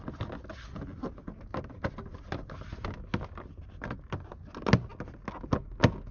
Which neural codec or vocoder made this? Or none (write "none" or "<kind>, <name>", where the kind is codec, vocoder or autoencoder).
none